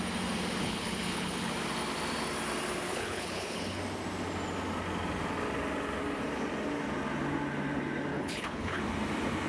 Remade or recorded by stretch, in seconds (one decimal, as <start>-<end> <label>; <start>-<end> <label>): 0.0-0.6 recorded; 0.6-1.5 remade; 1.5-2.9 recorded; 2.9-3.8 remade; 3.8-8.1 recorded; 8.1-8.8 remade; 8.8-9.5 recorded